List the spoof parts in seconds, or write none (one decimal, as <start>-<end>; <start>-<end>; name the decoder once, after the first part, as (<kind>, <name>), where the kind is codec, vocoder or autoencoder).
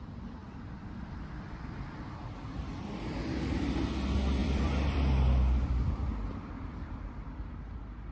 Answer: 4.4-8.1 (vocoder, BigVGAN v2)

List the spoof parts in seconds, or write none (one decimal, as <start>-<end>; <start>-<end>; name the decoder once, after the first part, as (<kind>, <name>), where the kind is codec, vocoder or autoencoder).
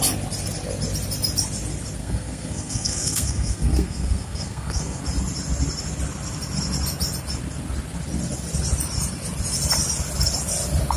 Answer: 2.0-5.0 (codec, SNAC)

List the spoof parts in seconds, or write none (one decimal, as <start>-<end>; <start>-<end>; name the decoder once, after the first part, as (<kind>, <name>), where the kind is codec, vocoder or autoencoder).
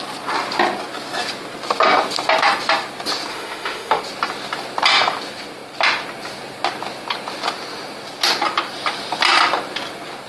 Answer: 3.3-4.0 (autoencoder, DAC-VAE)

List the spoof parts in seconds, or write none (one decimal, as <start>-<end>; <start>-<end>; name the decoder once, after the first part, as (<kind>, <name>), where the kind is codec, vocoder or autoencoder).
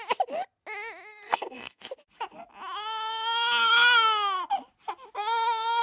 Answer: 1.1-1.8 (codec, SNAC)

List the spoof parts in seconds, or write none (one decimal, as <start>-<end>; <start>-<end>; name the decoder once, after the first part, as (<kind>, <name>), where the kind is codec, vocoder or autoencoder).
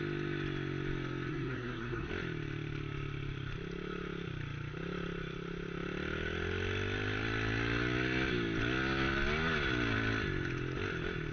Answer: 1.3-2.1 (codec, SNAC)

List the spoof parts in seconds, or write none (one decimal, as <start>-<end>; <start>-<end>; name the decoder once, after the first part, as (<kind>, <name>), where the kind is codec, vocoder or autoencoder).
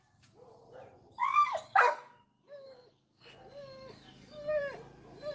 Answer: 1.2-3.2 (codec, DAC); 3.6-4.6